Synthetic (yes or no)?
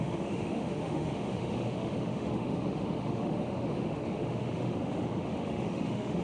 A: yes